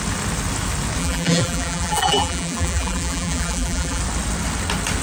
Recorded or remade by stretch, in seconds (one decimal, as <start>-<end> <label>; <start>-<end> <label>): 0.0-1.0 recorded; 1.0-4.0 remade; 4.0-5.0 recorded